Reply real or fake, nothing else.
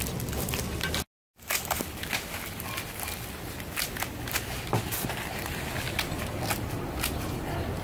real